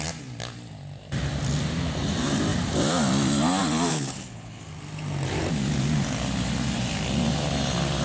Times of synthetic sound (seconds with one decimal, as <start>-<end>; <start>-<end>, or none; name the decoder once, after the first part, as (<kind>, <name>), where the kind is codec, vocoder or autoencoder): 3.9-4.6 (codec, HILCodec)